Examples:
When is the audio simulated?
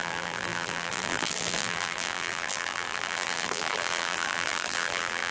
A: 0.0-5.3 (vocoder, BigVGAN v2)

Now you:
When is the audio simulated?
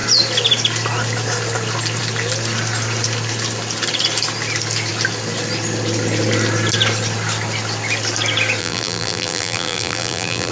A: 8.6-10.5 (vocoder, BigVGAN v2)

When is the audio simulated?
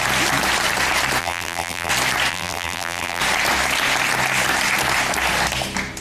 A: 1.2-1.9 (vocoder, BigVGAN v2); 2.3-3.2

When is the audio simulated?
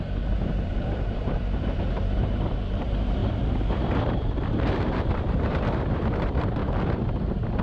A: 0.0-6.6 (vocoder, BigVGAN v2); 7.1-7.6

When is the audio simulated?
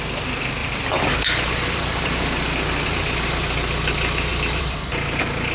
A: 0.6-3.0 (vocoder, BigVGAN v2); 4.3-4.9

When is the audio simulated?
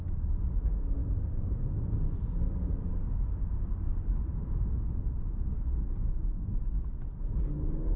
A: 1.0-2.9 (vocoder, BigVGAN v2); 3.9-6.6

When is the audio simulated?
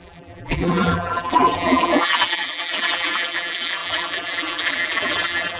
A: 0.0-5.6 (vocoder, BigVGAN v2)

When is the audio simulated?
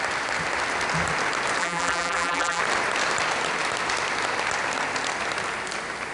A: 1.6-2.6 (vocoder, BigVGAN v2)